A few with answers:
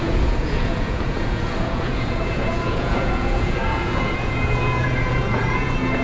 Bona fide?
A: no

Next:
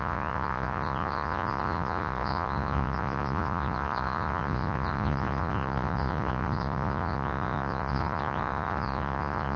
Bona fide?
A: no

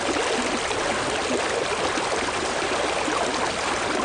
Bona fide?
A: yes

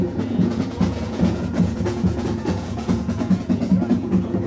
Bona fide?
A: no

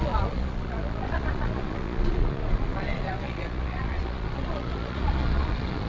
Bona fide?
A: no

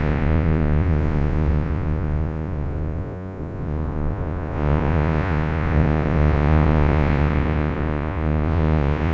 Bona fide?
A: no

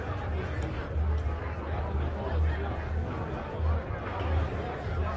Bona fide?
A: yes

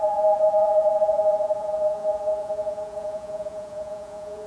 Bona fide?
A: no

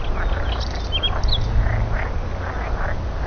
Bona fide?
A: yes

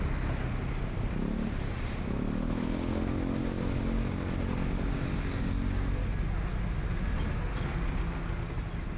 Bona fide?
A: yes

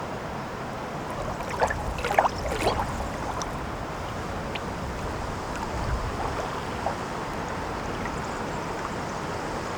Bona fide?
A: yes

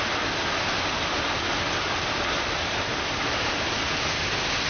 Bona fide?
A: yes